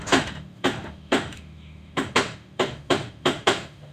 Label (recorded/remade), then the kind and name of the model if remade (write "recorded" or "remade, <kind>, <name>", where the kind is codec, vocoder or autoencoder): remade, autoencoder, DAC-VAE